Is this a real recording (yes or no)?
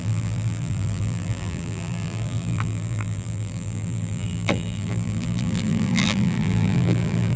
no